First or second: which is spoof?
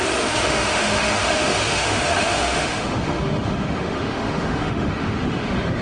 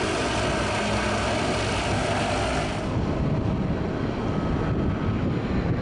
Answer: first